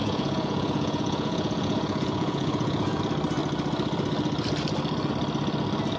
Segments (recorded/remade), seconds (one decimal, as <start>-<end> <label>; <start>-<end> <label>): 0.0-3.0 remade; 3.0-6.0 recorded